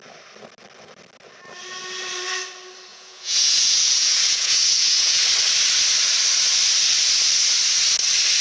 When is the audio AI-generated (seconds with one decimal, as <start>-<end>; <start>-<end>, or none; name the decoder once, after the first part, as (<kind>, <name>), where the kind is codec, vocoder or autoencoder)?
2.9-5.2 (vocoder, Vocos)